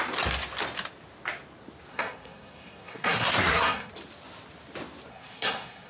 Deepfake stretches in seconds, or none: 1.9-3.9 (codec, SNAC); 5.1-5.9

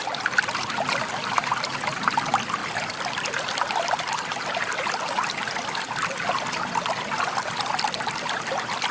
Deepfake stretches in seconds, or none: none

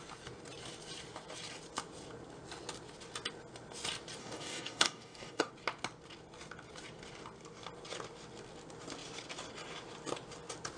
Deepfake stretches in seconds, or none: 4.2-5.5 (codec, DAC)

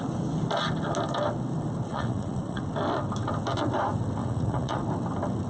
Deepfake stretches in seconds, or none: 1.9-2.6 (vocoder, Vocos); 4.2-4.8

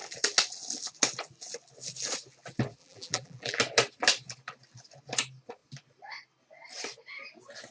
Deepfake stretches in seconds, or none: 2.8-3.6 (vocoder, BigVGAN v2)

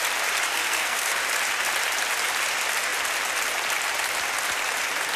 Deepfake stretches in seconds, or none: 0.5-1.2 (codec, SNAC)

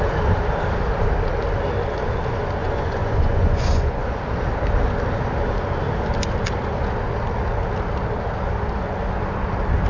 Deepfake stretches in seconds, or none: 2.6-4.2 (vocoder, Vocos)

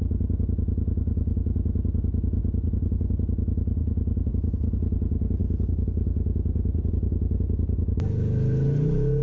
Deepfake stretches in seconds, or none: none